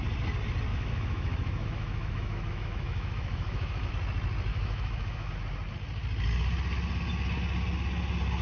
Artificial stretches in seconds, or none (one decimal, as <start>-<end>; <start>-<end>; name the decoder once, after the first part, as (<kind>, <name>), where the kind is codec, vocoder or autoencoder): 0.7-3.9 (autoencoder, DAC-VAE); 4.5-5.3